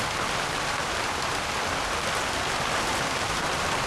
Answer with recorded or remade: recorded